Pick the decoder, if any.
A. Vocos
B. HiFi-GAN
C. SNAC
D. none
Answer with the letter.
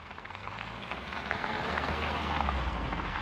C